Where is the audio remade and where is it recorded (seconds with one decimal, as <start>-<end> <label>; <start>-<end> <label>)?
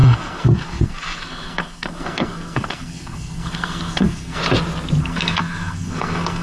0.0-4.4 remade; 4.4-5.0 recorded; 5.0-6.4 remade